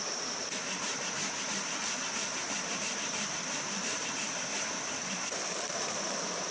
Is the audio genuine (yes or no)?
no